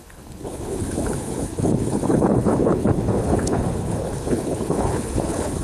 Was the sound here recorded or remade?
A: remade